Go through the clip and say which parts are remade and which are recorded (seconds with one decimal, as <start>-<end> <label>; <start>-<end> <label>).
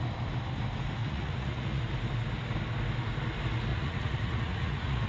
0.0-1.0 recorded; 1.0-1.8 remade; 1.8-3.7 recorded; 3.7-5.1 remade